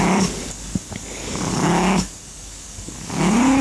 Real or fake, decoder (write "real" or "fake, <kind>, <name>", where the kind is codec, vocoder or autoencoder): fake, codec, DAC